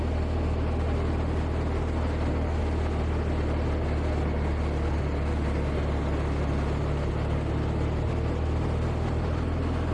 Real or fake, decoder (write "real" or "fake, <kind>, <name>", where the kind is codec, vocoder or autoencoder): real